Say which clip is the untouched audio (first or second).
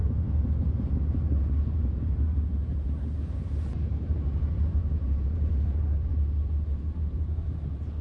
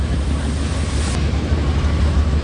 second